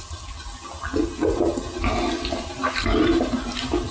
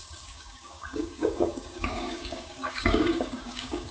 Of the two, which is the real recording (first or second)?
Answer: first